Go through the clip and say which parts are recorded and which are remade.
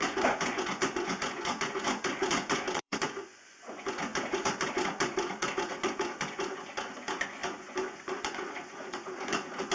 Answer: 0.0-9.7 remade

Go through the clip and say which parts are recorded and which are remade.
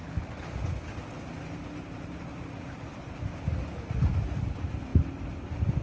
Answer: 0.0-5.8 recorded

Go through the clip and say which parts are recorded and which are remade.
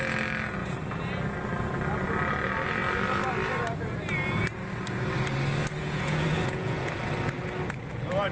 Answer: 0.0-0.6 recorded; 0.6-1.1 remade; 1.1-5.8 recorded; 5.8-6.9 remade; 6.9-8.3 recorded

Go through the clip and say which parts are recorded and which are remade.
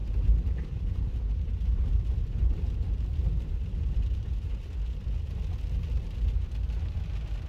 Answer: 0.0-4.5 remade; 4.5-7.5 recorded